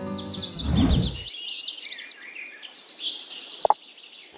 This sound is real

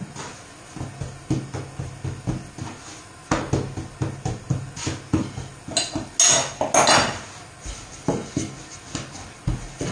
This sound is real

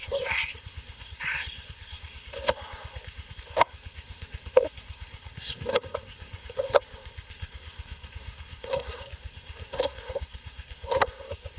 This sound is fake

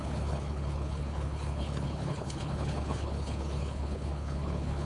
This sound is fake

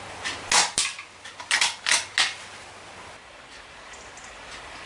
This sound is real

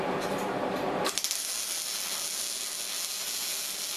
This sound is real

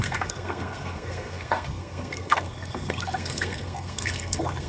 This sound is fake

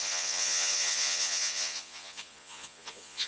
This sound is fake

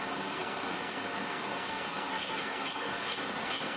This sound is fake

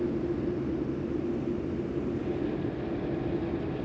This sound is real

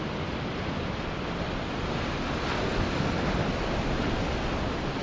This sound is real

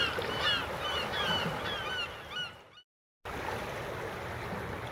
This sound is real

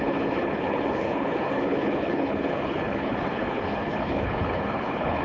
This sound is fake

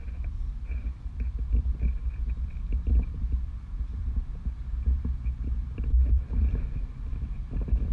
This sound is fake